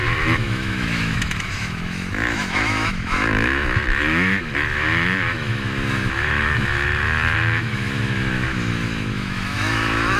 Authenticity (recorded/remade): remade